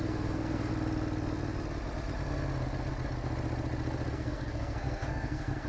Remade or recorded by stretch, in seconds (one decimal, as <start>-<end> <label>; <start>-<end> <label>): 0.0-0.7 remade; 0.7-4.1 recorded; 4.1-5.7 remade